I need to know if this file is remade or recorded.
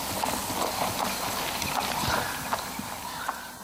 recorded